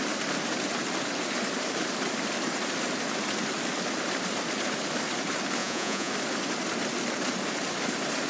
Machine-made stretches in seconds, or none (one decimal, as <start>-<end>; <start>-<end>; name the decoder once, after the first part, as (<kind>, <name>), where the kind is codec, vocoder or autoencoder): 5.6-6.1 (vocoder, Vocos)